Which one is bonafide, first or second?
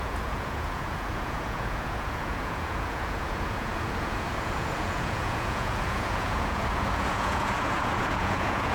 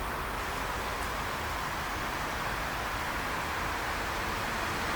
second